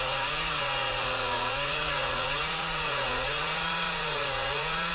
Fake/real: fake